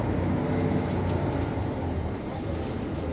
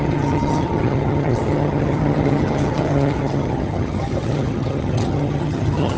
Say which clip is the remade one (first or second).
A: second